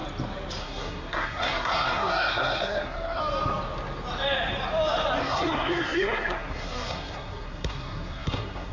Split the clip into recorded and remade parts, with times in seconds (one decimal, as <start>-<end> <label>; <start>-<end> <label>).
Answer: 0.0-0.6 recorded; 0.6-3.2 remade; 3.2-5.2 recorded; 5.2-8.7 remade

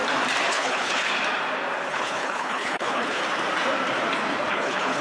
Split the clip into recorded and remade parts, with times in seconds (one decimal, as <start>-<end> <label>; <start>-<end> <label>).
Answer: 0.0-0.5 recorded; 0.5-1.1 remade; 1.1-1.9 recorded; 1.9-3.2 remade; 3.2-4.5 recorded; 4.5-5.0 remade

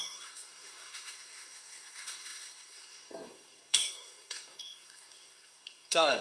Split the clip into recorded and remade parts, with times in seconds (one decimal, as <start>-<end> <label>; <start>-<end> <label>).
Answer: 0.0-6.2 remade

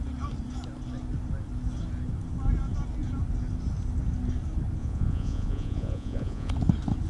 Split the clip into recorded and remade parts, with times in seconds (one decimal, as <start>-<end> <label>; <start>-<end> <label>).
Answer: 0.0-4.8 recorded; 4.8-6.5 remade; 6.5-7.1 recorded

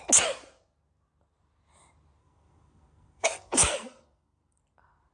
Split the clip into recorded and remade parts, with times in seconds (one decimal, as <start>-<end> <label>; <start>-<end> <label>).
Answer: 0.0-2.2 recorded; 2.2-4.6 remade; 4.6-5.1 recorded

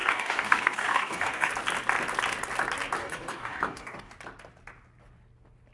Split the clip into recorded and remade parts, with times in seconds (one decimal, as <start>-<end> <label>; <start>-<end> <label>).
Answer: 0.0-1.5 remade; 1.5-3.0 recorded; 3.0-4.1 remade; 4.1-5.7 recorded

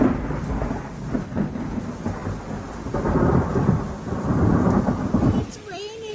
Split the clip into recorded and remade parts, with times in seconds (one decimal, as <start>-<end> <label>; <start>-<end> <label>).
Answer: 0.0-1.2 recorded; 1.2-1.8 remade; 1.8-6.1 recorded